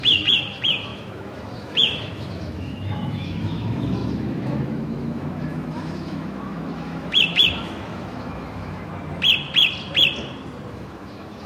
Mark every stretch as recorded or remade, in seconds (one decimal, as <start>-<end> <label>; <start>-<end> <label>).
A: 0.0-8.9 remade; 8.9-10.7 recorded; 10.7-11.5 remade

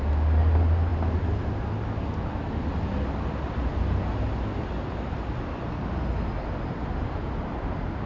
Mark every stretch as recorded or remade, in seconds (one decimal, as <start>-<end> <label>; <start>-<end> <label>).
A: 0.0-8.1 recorded

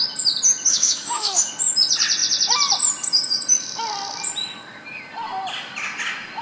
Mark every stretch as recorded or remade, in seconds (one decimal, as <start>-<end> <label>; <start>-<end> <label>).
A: 0.0-0.7 recorded; 0.7-1.5 remade; 1.5-6.4 recorded

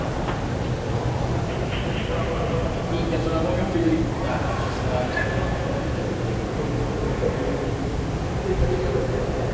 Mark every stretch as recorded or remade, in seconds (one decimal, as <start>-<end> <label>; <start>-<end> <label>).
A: 0.0-9.5 recorded